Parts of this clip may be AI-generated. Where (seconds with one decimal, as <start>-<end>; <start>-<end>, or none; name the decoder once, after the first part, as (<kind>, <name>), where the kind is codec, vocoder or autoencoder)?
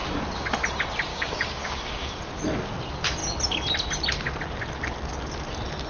1.1-2.1 (codec, DAC)